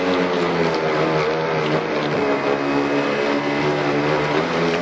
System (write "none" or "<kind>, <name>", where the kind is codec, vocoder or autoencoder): none